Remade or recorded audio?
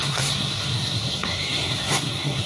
remade